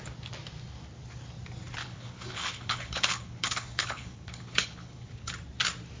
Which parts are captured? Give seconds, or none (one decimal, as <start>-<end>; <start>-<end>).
0.0-1.8; 5.3-6.0